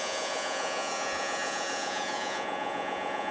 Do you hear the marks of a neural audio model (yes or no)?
yes